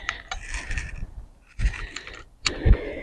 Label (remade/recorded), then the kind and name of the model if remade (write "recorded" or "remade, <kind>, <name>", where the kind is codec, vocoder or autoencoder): recorded